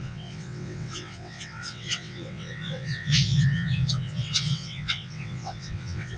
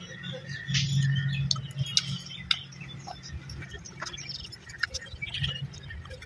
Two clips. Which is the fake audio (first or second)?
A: first